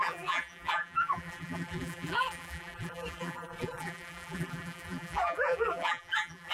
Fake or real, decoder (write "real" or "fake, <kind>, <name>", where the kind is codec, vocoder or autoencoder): fake, vocoder, BigVGAN v2